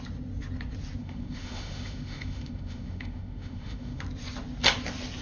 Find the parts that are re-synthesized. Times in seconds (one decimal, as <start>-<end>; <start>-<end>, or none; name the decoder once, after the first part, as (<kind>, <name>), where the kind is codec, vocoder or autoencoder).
1.0-4.0 (autoencoder, DAC-VAE)